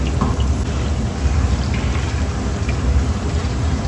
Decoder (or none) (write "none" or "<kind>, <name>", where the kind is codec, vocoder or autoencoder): none